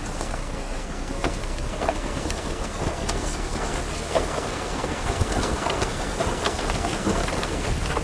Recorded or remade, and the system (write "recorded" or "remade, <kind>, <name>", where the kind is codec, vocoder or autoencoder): remade, codec, SNAC